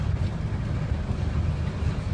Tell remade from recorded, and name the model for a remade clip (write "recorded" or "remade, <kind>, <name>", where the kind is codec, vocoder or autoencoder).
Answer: recorded